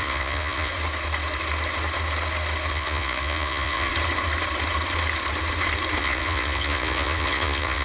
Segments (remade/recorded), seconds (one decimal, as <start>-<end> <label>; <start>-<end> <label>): 0.0-0.7 remade; 0.7-2.7 recorded; 2.7-3.9 remade; 3.9-6.0 recorded; 6.0-7.8 remade